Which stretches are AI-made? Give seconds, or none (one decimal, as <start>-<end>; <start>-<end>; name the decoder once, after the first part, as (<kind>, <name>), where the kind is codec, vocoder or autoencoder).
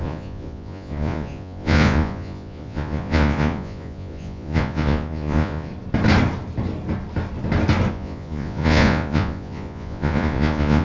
0.0-5.7 (vocoder, Vocos); 7.9-10.8